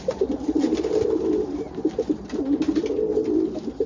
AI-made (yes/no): no